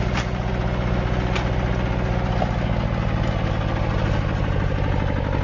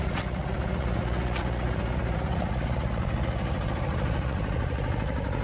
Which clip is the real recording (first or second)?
first